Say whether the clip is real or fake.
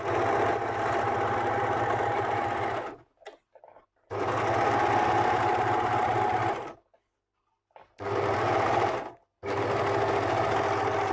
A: real